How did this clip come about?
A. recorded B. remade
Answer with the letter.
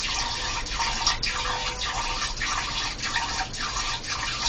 A